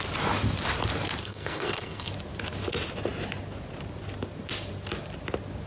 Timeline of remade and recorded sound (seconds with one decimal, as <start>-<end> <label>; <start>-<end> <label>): 0.0-1.2 recorded; 1.2-2.1 remade; 2.1-5.7 recorded